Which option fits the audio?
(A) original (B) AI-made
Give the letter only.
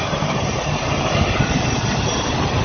B